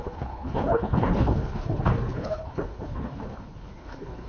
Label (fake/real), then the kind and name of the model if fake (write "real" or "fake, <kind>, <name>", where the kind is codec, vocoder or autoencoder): fake, codec, HILCodec